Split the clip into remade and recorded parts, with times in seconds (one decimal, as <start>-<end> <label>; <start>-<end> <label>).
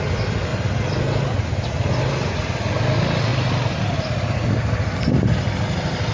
0.0-3.3 recorded; 3.3-3.8 remade; 3.8-6.1 recorded